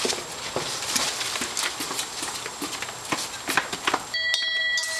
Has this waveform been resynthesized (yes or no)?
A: no